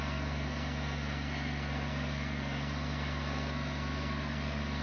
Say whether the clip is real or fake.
fake